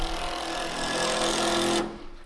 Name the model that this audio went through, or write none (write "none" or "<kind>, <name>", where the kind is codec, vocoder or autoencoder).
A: none